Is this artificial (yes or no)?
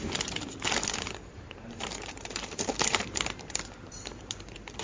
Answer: yes